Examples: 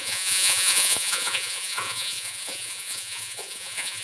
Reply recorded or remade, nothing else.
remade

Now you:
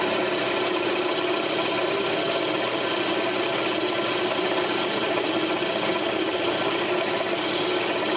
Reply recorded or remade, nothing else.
recorded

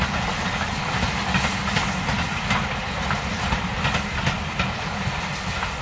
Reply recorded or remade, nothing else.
recorded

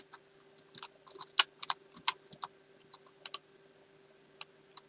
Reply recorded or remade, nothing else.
recorded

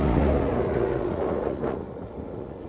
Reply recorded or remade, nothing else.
remade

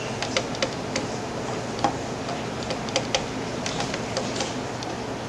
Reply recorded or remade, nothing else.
recorded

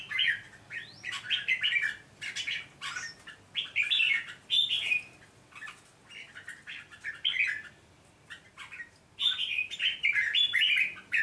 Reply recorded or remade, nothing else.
recorded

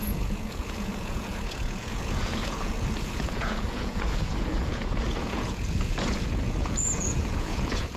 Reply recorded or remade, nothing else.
remade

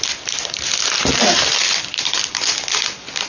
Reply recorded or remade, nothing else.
recorded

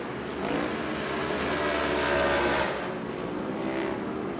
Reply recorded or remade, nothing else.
recorded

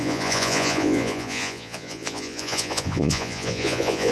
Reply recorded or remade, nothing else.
remade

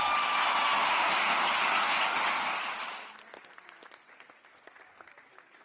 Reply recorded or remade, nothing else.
recorded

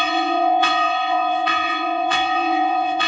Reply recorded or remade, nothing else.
remade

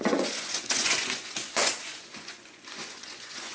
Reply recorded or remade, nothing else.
remade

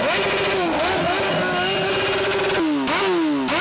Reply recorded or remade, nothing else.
recorded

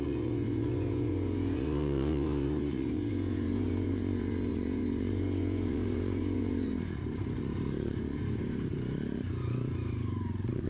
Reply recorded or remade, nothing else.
remade